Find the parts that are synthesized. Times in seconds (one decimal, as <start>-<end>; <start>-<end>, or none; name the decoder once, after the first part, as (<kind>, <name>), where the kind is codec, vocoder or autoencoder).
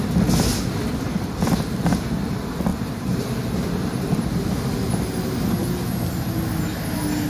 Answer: 2.7-3.8 (vocoder, BigVGAN v2)